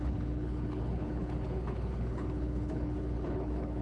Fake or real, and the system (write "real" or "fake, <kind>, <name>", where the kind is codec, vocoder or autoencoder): fake, codec, HILCodec